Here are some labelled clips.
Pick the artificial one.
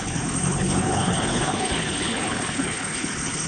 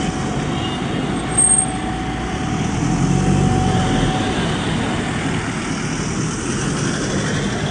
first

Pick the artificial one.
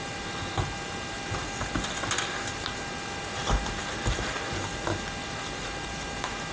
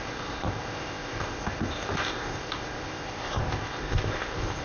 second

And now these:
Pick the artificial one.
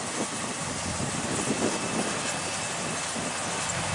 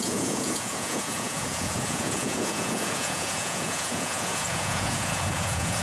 second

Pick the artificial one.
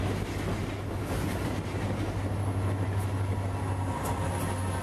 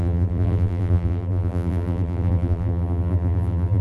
second